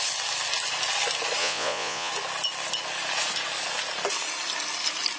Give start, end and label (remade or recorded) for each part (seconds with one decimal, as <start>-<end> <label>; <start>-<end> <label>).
0.0-1.4 recorded; 1.4-2.1 remade; 2.1-5.2 recorded